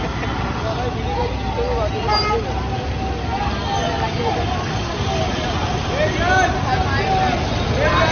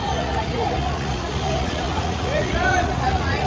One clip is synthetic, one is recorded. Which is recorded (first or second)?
first